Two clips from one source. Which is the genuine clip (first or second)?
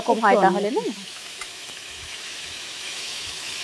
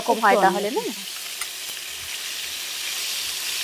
second